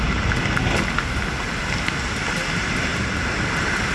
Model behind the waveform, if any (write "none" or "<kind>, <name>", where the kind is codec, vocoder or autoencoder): none